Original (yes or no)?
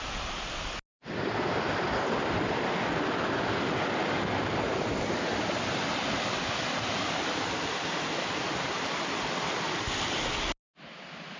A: yes